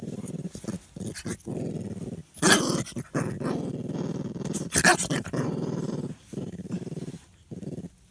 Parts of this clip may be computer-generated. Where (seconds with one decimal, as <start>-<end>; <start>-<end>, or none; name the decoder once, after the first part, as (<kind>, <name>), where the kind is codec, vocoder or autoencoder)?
0.0-0.5 (vocoder, BigVGAN v2); 4.9-7.3